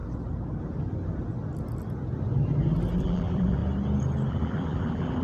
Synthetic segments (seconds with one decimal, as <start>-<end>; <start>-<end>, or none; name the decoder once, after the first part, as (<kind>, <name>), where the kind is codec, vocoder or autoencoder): 3.0-3.6 (vocoder, BigVGAN v2); 4.3-5.2